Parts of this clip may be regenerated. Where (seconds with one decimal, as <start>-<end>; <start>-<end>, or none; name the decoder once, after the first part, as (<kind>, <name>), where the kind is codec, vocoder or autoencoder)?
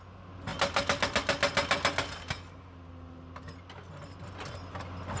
none